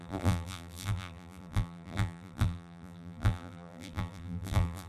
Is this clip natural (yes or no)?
no